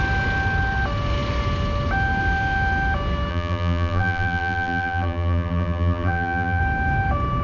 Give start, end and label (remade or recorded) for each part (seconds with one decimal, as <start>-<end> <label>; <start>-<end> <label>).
0.0-3.3 recorded; 3.3-6.6 remade; 6.6-7.4 recorded